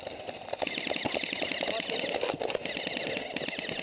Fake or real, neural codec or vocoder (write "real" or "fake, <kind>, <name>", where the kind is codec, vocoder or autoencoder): real